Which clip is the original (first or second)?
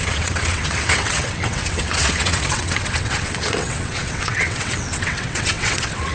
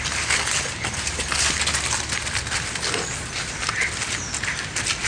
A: second